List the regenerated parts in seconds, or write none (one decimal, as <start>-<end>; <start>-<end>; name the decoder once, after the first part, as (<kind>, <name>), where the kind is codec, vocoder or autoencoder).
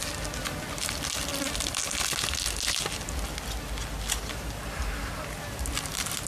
none